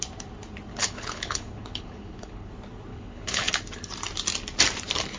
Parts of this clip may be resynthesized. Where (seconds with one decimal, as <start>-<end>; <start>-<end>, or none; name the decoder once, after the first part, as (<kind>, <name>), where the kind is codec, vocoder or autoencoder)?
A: 0.7-2.5 (codec, HILCodec); 2.9-3.5